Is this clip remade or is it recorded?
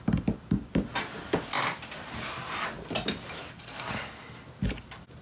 recorded